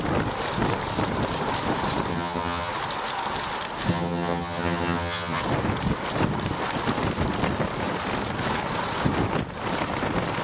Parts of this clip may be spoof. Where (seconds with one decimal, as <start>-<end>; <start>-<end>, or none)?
2.1-2.7; 3.9-5.4